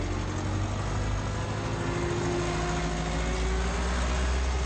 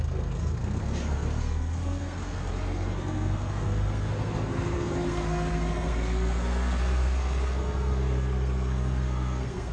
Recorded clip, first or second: first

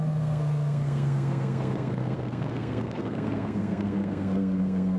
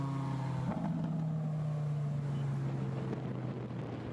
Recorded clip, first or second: second